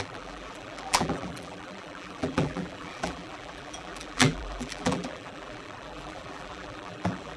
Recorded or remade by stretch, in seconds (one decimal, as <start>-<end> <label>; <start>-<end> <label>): 0.0-7.4 remade